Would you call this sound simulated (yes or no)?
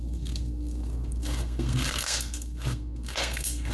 yes